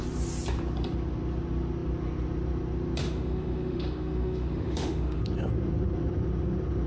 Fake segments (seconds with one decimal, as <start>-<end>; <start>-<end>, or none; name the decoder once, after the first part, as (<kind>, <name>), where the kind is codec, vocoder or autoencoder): 3.0-5.2 (autoencoder, DAC-VAE)